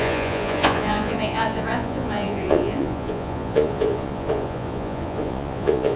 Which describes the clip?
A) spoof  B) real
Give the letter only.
A